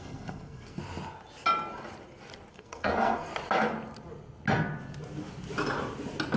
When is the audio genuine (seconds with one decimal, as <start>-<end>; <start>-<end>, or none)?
0.8-2.5; 3.3-6.4